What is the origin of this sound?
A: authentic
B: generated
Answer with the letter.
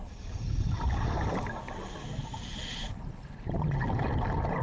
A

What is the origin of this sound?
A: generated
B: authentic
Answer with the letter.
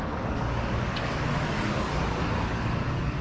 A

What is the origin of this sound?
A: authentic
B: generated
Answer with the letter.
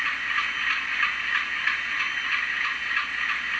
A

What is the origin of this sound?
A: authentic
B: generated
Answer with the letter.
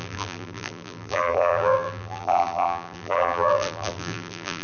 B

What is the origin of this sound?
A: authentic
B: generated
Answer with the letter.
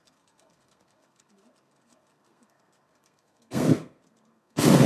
B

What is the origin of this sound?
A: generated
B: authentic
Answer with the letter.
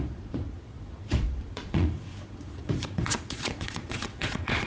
A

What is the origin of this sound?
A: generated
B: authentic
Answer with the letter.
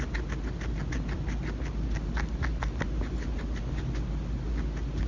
B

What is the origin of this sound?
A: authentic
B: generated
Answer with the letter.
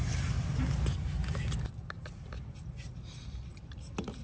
A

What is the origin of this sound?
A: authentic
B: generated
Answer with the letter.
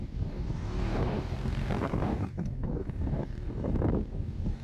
B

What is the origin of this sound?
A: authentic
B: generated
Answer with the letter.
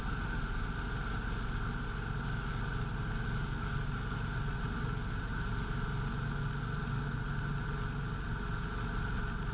A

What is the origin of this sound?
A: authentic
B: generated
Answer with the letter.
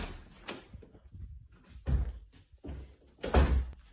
A